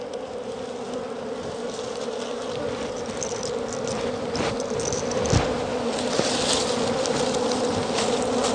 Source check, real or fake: real